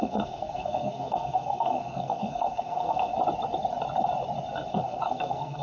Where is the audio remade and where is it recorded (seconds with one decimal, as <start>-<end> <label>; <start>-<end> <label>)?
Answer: 0.0-3.1 remade; 3.1-4.7 recorded; 4.7-5.6 remade